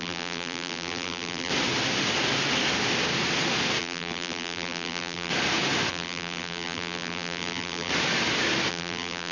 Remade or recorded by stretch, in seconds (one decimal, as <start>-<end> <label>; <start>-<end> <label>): 0.0-1.5 remade; 1.5-3.8 recorded; 3.8-5.3 remade; 5.3-5.9 recorded; 5.9-7.9 remade; 7.9-8.7 recorded; 8.7-9.3 remade